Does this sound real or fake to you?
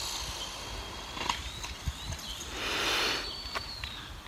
real